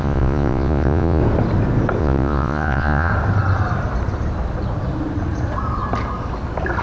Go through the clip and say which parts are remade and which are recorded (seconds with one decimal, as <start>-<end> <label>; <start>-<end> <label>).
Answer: 0.0-1.2 remade; 1.2-2.0 recorded; 2.0-3.1 remade; 3.1-6.8 recorded